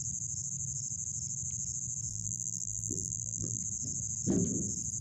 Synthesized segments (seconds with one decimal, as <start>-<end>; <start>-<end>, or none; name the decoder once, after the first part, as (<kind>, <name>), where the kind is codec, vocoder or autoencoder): 2.1-3.6 (vocoder, BigVGAN v2)